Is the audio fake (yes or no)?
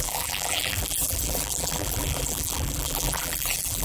yes